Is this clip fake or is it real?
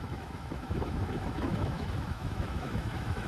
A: fake